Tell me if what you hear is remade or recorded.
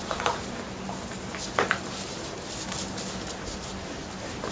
recorded